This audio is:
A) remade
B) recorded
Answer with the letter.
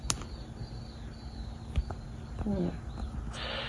B